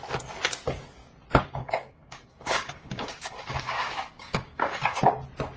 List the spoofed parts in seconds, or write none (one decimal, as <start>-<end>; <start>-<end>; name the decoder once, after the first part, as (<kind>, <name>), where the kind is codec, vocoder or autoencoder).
1.6-5.0 (codec, DAC)